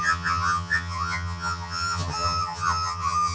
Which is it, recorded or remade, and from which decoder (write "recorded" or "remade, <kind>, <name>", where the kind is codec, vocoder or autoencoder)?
remade, vocoder, HiFi-GAN